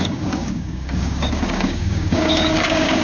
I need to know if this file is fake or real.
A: fake